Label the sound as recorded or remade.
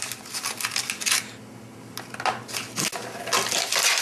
recorded